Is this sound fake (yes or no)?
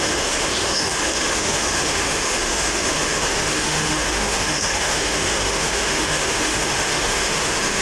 yes